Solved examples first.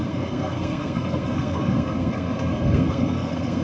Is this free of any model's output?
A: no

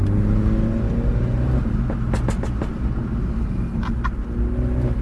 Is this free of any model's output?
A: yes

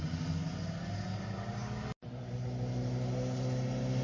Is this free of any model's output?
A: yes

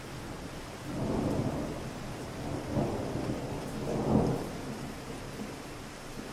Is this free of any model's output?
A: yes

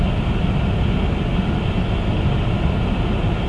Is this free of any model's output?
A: yes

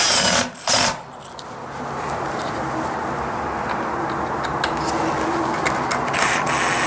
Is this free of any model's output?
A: yes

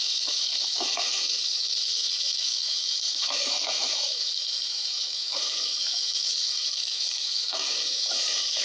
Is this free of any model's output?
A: no